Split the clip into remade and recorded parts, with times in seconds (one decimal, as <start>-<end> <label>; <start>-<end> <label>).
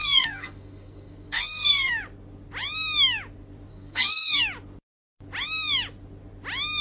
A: 0.0-1.9 remade; 1.9-3.7 recorded; 3.7-4.4 remade; 4.4-6.8 recorded